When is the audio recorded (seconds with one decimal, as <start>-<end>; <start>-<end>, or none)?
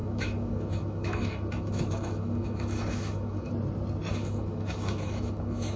3.5-4.1